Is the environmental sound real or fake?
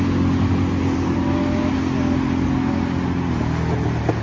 real